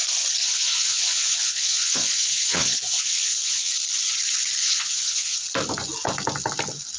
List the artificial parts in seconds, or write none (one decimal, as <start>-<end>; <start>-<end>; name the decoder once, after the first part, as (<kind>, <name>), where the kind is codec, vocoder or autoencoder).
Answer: 0.4-3.7 (vocoder, Vocos); 4.6-5.4